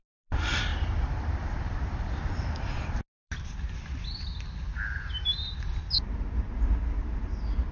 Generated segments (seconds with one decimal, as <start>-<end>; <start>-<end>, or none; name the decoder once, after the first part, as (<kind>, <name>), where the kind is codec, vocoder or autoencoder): 0.7-3.3 (vocoder, BigVGAN v2)